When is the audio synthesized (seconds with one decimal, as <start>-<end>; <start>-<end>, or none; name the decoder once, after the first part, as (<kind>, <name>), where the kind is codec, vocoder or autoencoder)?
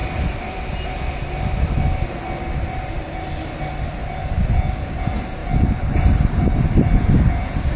none